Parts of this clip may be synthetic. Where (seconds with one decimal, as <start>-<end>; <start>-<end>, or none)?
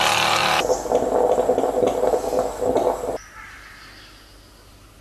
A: none